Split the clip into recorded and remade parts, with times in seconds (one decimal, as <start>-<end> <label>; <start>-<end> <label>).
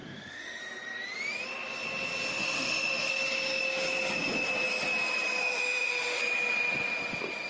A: 0.0-0.6 remade; 0.6-2.3 recorded; 2.3-3.1 remade; 3.1-5.4 recorded; 5.4-6.2 remade; 6.2-7.5 recorded